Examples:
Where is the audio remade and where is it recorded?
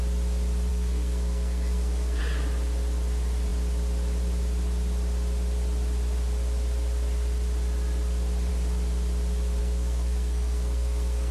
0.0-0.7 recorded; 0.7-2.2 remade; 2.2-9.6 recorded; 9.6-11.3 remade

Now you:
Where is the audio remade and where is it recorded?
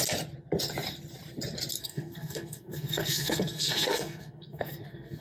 0.0-1.8 recorded; 1.8-5.2 remade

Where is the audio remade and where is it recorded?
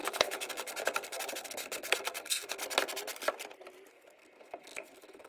0.0-2.6 remade; 2.6-3.9 recorded; 3.9-5.3 remade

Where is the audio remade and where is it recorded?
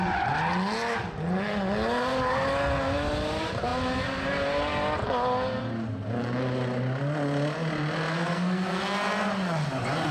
0.0-8.1 recorded; 8.1-8.8 remade; 8.8-10.1 recorded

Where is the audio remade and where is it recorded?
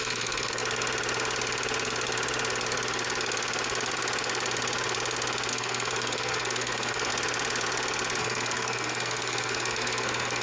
0.0-0.6 remade; 0.6-5.5 recorded; 5.5-7.1 remade; 7.1-8.2 recorded; 8.2-10.4 remade